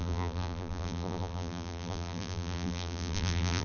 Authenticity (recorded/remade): remade